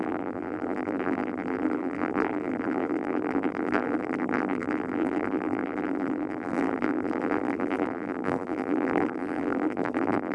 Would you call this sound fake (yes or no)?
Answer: yes